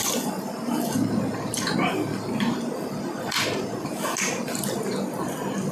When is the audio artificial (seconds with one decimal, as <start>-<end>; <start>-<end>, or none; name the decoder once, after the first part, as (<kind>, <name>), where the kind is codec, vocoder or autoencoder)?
none